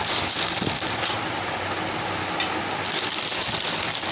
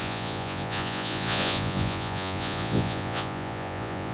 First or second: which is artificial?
second